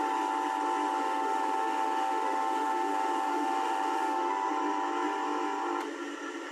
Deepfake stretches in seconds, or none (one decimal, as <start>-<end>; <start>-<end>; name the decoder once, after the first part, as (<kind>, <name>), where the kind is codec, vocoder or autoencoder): 1.0-4.5 (autoencoder, DAC-VAE)